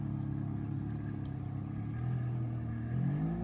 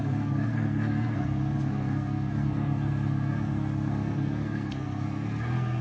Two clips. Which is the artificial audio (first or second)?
second